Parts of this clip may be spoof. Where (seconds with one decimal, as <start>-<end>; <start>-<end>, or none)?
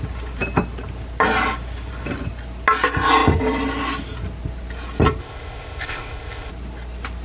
5.2-6.5